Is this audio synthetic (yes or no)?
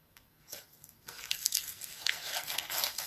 yes